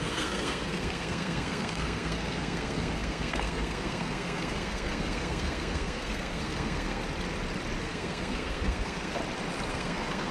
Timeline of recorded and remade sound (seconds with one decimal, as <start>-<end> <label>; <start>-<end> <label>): 0.0-7.0 remade; 7.0-7.8 recorded; 7.8-9.2 remade; 9.2-9.7 recorded; 9.7-10.3 remade